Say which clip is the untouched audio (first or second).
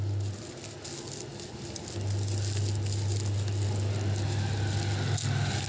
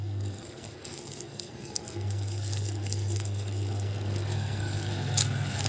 first